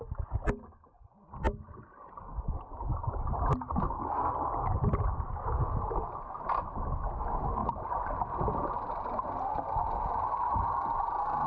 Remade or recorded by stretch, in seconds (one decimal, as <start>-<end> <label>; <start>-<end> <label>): 0.0-11.5 recorded